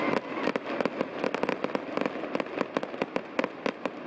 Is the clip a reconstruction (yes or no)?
no